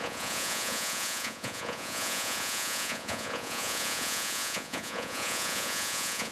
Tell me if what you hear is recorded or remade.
remade